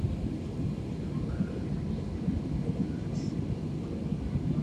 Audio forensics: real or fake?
real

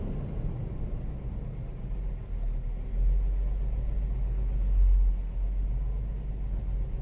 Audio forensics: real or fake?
real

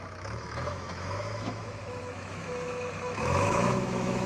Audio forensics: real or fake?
fake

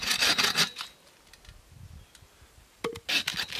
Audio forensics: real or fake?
real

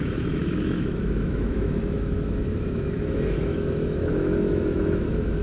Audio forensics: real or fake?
fake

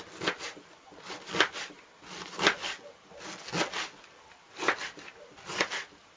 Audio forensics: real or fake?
real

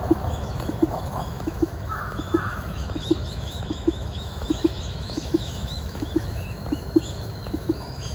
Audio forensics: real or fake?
fake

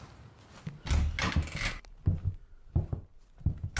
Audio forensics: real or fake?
real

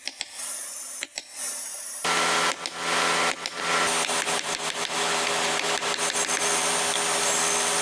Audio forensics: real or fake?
real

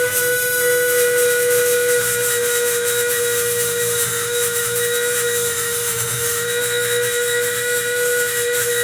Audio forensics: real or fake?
fake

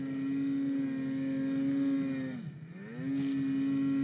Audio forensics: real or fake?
real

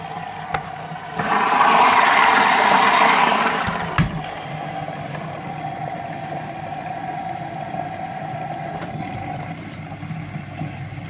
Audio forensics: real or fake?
real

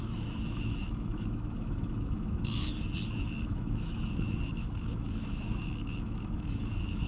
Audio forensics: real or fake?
fake